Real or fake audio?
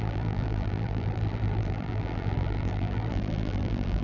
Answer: fake